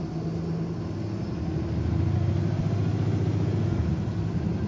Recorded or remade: recorded